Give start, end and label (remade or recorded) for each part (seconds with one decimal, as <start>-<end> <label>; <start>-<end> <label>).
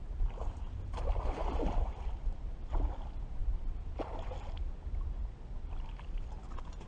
0.0-0.8 remade; 0.8-3.4 recorded; 3.4-4.3 remade; 4.3-6.9 recorded